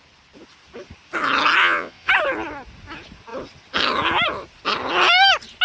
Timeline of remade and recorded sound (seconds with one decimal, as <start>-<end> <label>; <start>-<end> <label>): 0.0-1.6 recorded; 1.6-2.1 remade; 2.1-5.6 recorded